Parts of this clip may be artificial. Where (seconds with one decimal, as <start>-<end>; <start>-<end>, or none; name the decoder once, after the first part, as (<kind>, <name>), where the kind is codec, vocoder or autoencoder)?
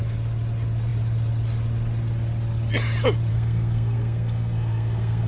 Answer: 3.3-5.3 (codec, SNAC)